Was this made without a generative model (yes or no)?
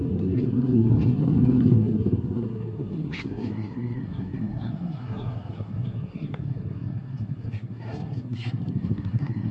no